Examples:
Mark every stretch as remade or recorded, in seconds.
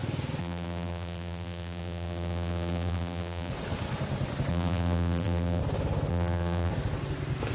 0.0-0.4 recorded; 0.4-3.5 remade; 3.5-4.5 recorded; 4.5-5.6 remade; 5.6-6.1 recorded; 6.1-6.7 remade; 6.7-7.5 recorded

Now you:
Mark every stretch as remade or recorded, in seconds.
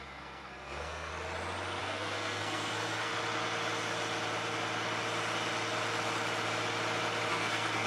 0.0-1.1 remade; 1.1-1.8 recorded; 1.8-3.1 remade; 3.1-7.3 recorded; 7.3-7.9 remade